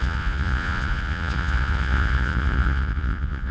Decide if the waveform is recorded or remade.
remade